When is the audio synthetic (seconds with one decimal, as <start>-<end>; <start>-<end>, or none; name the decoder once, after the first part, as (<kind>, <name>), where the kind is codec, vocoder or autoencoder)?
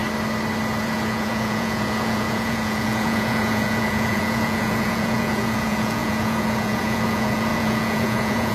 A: 0.8-8.5 (vocoder, Vocos)